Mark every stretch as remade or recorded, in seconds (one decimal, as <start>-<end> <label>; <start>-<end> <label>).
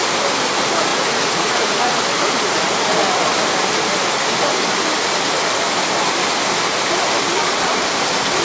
0.0-0.9 recorded; 0.9-2.0 remade; 2.0-8.4 recorded